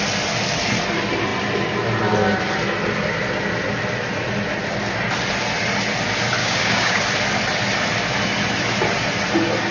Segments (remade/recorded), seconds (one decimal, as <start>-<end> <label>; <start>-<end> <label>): 0.0-6.4 recorded; 6.4-7.0 remade; 7.0-9.7 recorded